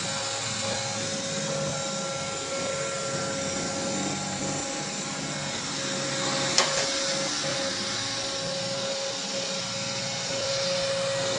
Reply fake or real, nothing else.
real